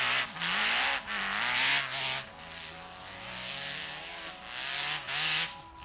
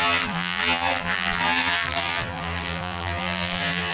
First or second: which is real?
first